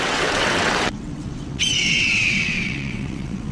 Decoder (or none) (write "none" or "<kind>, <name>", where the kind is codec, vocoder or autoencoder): vocoder, WaveNeXt